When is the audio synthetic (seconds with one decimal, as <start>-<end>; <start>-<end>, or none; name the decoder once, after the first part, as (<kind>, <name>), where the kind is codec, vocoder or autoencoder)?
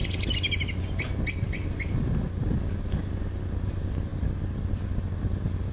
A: none